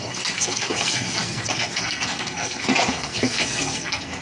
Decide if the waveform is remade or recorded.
remade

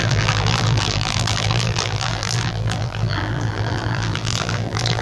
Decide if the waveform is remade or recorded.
remade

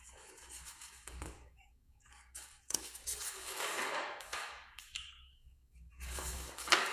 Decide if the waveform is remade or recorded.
remade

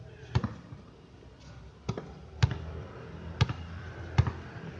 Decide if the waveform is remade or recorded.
recorded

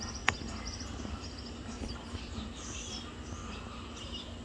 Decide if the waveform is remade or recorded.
recorded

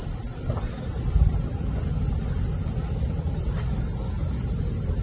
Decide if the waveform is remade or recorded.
recorded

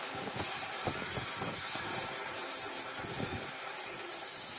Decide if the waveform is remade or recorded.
remade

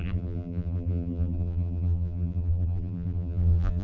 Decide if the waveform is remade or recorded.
remade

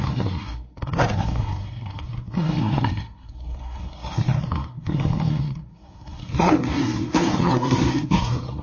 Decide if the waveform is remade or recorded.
remade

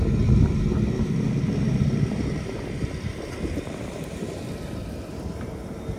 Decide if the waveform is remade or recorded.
recorded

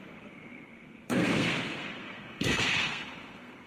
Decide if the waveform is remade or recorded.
remade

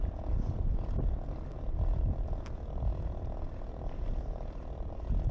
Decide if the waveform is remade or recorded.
recorded